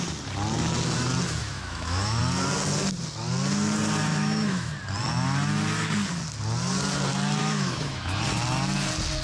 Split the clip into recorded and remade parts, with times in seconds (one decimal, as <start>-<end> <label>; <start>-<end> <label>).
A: 0.0-1.4 recorded; 1.4-2.2 remade; 2.2-4.1 recorded; 4.1-4.7 remade; 4.7-7.4 recorded; 7.4-8.2 remade; 8.2-9.2 recorded